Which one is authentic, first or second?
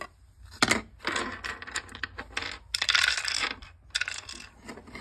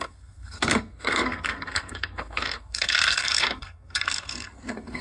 first